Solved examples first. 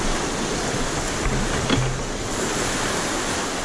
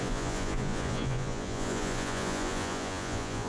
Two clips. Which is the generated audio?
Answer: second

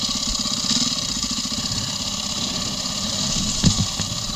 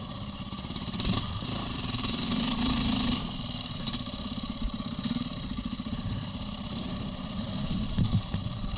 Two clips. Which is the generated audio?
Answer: second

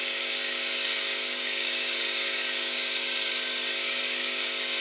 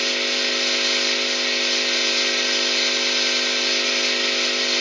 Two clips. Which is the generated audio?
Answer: first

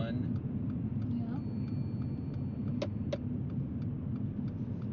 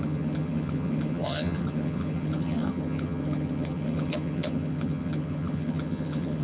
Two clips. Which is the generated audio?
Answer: second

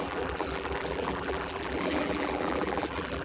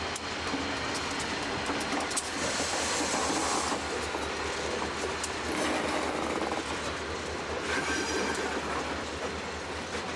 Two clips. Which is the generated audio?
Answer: first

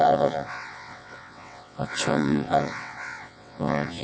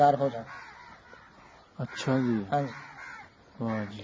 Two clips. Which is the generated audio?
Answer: first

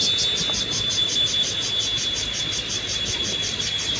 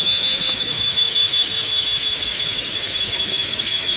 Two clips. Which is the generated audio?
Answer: second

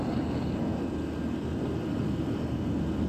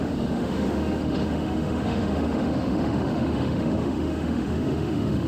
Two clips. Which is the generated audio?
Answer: second